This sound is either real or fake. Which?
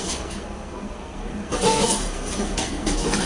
fake